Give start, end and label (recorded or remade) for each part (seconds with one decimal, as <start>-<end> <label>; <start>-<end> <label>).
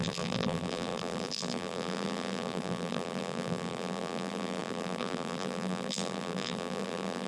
0.0-7.3 remade